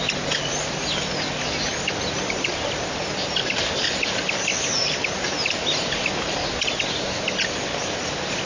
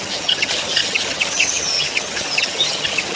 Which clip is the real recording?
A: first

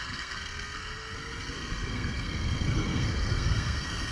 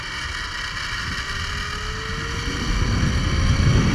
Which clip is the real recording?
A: second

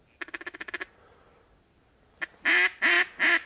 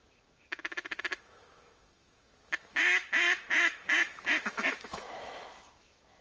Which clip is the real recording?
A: first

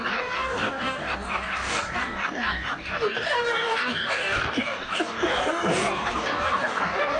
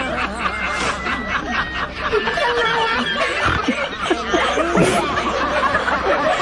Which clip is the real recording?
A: second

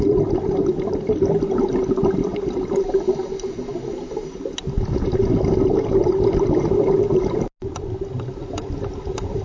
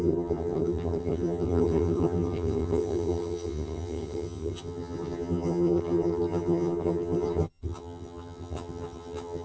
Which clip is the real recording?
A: first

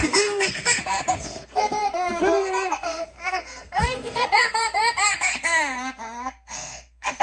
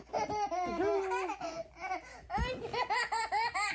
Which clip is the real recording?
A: second